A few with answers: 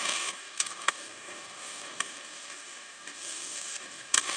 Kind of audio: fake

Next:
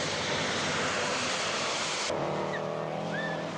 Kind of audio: real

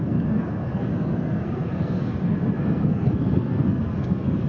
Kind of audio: fake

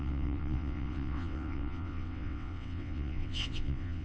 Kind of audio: fake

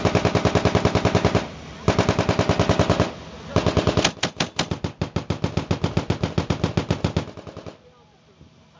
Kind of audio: real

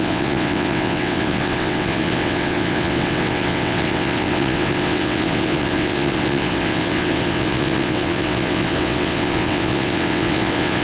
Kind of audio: fake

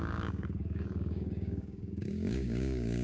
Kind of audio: fake